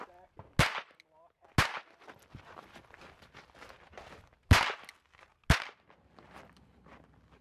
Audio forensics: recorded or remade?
recorded